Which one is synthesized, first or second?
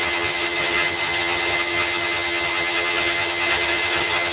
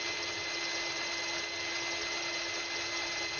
first